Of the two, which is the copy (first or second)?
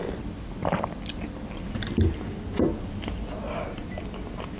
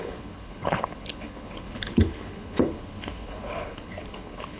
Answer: second